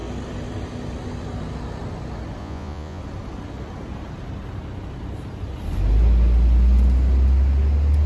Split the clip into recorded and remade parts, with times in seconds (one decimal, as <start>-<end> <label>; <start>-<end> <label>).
0.0-2.4 recorded; 2.4-3.0 remade; 3.0-8.1 recorded